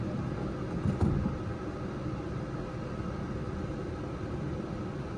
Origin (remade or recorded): recorded